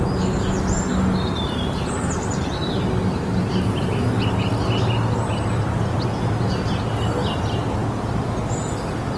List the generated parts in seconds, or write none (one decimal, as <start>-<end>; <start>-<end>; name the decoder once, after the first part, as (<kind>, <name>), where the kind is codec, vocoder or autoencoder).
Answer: none